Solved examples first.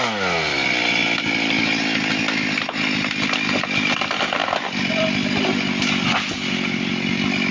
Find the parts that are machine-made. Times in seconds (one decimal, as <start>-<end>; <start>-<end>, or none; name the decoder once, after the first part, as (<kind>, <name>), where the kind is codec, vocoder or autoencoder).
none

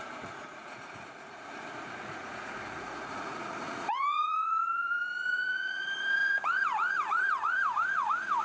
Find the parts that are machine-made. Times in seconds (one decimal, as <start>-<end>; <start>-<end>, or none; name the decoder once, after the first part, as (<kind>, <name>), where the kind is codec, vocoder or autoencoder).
0.0-8.4 (vocoder, Vocos)

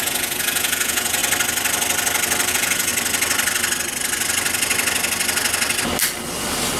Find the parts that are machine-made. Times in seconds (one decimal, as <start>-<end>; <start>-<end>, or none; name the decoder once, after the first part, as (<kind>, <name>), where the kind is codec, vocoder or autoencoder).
0.0-1.2 (vocoder, Vocos); 2.5-2.9

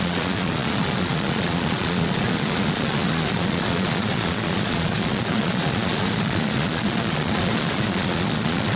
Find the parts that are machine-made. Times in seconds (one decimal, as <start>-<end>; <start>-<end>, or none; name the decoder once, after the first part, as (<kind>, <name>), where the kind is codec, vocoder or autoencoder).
0.0-8.8 (vocoder, Vocos)

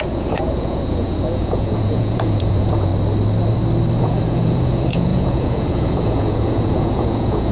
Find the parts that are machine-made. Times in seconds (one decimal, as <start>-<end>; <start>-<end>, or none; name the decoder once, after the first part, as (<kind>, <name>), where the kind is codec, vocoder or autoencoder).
0.0-2.9 (vocoder, Vocos); 4.0-7.5

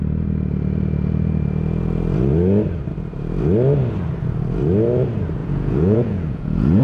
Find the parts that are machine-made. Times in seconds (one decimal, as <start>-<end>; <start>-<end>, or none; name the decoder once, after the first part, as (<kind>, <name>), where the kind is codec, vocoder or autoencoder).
5.4-6.8 (vocoder, Vocos)